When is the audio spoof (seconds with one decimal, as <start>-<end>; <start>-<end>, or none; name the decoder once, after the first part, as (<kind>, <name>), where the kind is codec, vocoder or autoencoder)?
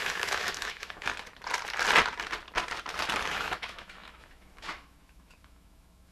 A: 0.0-1.1 (autoencoder, DAC-VAE); 3.3-6.1